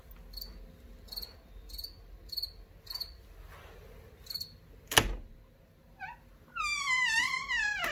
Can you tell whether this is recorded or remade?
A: recorded